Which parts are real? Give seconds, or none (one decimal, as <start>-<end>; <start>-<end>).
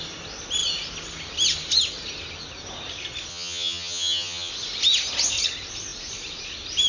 0.0-3.3; 4.5-6.9